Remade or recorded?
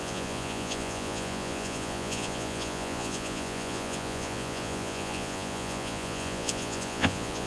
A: remade